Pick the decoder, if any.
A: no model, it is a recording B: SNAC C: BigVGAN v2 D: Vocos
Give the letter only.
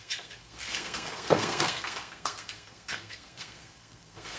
B